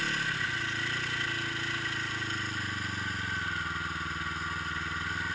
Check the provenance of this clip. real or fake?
real